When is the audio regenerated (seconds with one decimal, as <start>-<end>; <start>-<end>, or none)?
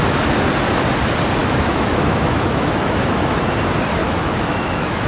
1.4-3.4; 4.0-5.1